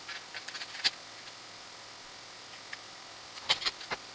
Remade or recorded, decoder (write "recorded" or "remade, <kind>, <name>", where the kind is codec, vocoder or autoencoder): recorded